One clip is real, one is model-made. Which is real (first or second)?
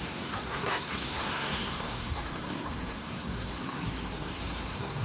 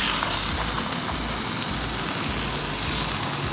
second